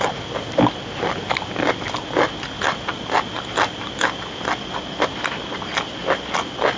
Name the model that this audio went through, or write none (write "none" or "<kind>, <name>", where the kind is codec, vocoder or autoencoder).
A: none